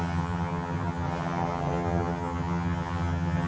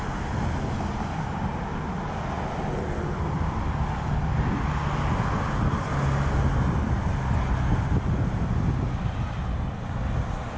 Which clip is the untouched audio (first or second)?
second